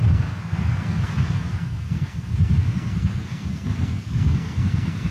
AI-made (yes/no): yes